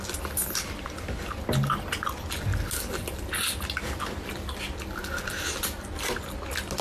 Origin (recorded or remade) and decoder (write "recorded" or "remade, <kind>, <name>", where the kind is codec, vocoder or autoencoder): recorded